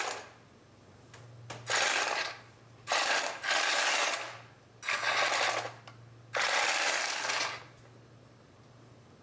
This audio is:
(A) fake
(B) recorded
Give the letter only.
B